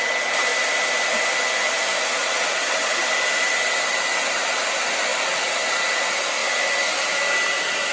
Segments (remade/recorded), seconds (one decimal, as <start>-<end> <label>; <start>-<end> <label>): 0.0-2.1 recorded; 2.1-2.9 remade; 2.9-7.9 recorded